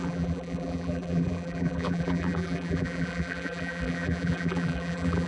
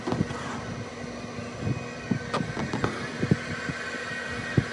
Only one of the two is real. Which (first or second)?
second